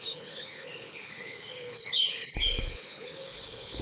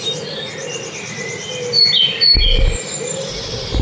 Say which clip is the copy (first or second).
first